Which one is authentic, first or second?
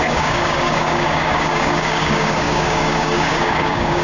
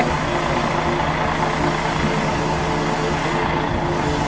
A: second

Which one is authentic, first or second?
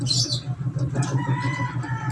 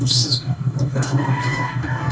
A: first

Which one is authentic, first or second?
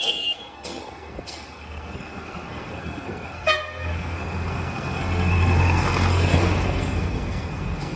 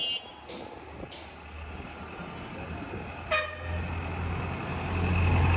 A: second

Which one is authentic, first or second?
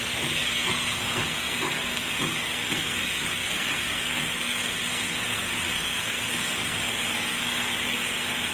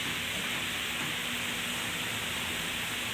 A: second